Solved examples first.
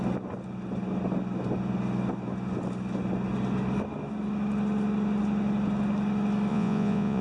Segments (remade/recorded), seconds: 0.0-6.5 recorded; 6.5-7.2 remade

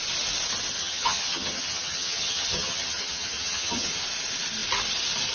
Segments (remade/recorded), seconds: 0.0-0.8 recorded; 0.8-4.0 remade; 4.0-5.3 recorded

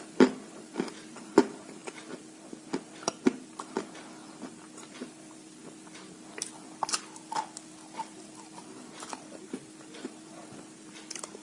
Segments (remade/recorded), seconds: 0.0-1.8 remade; 1.8-4.7 recorded; 4.7-5.6 remade; 5.6-9.2 recorded; 9.2-10.4 remade; 10.4-10.9 recorded; 10.9-11.4 remade

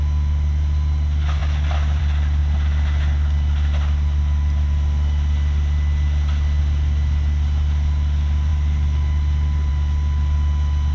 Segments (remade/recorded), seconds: 0.0-10.9 recorded

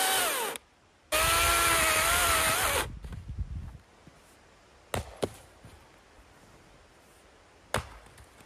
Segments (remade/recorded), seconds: 0.0-8.5 recorded

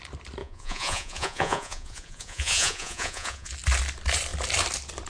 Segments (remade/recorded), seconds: 0.0-0.4 recorded; 0.4-3.5 remade; 3.5-5.1 recorded